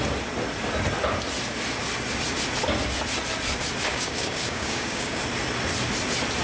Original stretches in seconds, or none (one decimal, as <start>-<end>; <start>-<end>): 0.0-3.9; 5.2-6.4